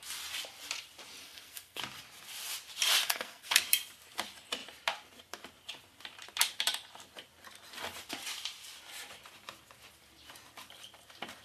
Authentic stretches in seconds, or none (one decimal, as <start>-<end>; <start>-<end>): 0.0-1.2; 1.8-3.0; 3.6-11.4

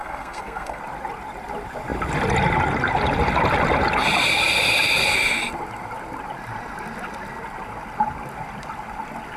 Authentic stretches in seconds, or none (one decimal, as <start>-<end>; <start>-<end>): 0.8-9.4

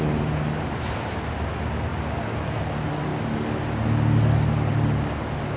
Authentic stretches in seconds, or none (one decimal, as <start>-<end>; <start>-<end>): 1.3-5.6

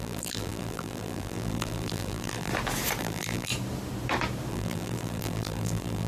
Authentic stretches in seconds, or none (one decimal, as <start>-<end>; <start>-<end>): 2.5-3.0; 3.5-4.5